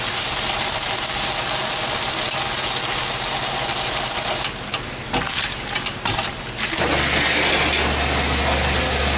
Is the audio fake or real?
real